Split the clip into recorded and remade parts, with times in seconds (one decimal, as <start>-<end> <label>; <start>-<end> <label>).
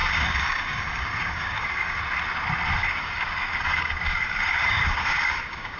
0.0-2.0 remade; 2.0-2.8 recorded; 2.8-5.8 remade